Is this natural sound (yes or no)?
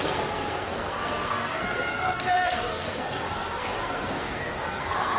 no